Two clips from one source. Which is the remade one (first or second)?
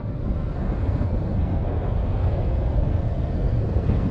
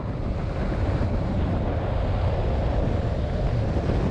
first